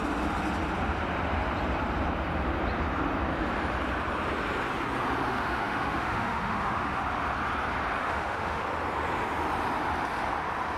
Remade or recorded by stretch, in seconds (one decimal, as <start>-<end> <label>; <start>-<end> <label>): 0.0-5.3 recorded; 5.3-7.0 remade; 7.0-8.0 recorded; 8.0-8.6 remade; 8.6-10.8 recorded